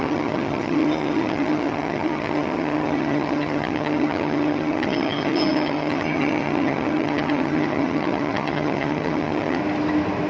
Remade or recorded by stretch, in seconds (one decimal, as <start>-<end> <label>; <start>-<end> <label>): 0.0-9.6 remade; 9.6-10.3 recorded